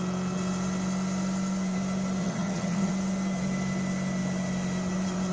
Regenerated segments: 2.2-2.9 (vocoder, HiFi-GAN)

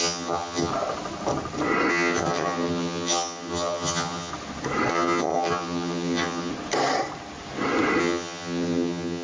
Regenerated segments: 0.0-0.7 (vocoder, HiFi-GAN); 1.9-4.3; 4.9-6.5; 8.0-9.2

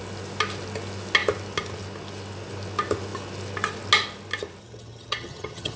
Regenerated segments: 4.6-5.8 (vocoder, HiFi-GAN)

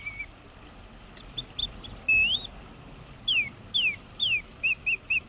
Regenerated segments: none

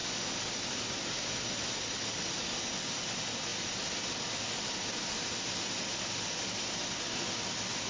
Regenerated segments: none